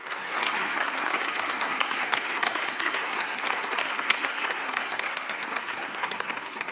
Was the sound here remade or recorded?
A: remade